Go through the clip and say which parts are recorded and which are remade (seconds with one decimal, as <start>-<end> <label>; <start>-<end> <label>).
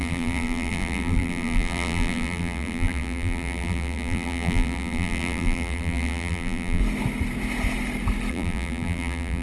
0.0-6.8 remade; 6.8-8.3 recorded; 8.3-9.4 remade